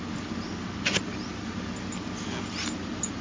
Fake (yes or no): no